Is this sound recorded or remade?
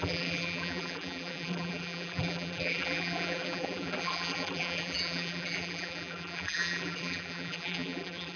remade